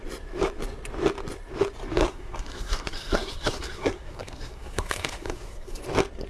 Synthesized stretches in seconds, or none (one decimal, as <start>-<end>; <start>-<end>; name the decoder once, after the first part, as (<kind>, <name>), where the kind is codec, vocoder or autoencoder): 2.0-5.8 (codec, SNAC)